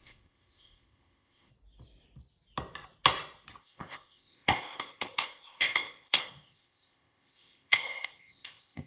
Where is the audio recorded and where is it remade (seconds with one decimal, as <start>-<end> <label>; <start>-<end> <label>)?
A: 0.0-1.5 remade; 1.5-3.6 recorded; 3.6-8.9 remade